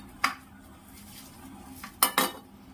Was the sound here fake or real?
real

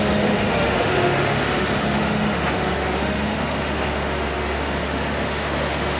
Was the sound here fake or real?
fake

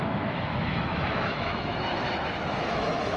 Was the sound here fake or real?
fake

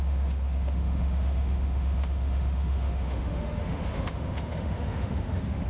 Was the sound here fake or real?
fake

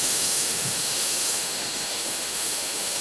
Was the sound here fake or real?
fake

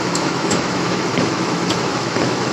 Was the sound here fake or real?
fake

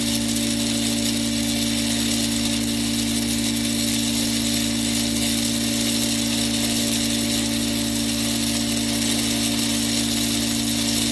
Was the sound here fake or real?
real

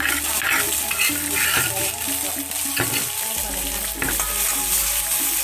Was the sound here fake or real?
real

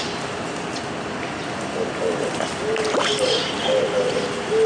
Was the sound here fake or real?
real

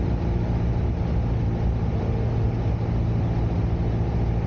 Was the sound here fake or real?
real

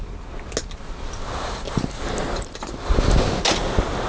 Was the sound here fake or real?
real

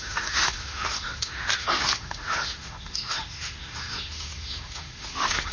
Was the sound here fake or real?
fake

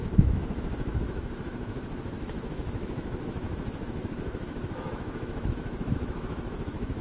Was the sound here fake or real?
fake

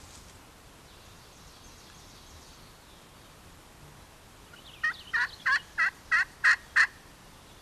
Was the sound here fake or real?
real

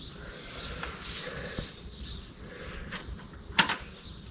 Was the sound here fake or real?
real